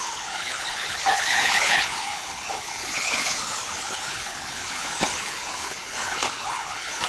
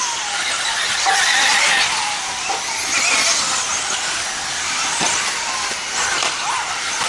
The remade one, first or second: first